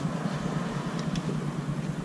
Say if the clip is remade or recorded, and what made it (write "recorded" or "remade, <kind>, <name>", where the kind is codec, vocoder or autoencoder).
recorded